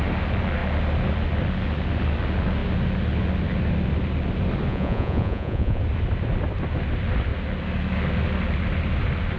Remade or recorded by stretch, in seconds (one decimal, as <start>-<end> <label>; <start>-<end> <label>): 0.0-4.7 recorded; 4.7-5.8 remade; 5.8-9.4 recorded